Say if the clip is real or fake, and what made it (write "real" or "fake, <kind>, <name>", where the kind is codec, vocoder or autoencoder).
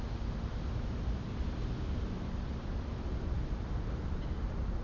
real